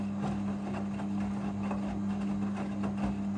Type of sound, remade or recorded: recorded